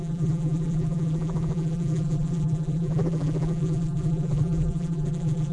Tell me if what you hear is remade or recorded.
remade